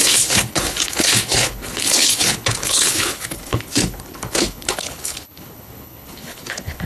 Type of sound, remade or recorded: remade